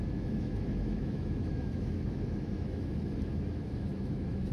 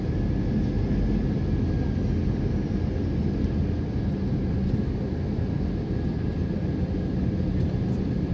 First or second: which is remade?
first